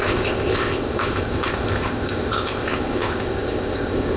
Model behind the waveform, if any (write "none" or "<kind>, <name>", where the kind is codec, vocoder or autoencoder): codec, ZipCodec